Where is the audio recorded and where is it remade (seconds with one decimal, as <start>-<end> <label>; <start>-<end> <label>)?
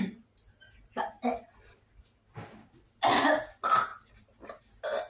0.0-5.1 recorded